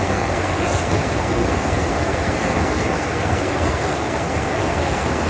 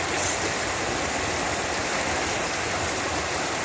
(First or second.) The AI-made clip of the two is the first